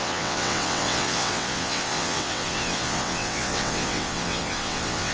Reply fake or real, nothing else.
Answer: fake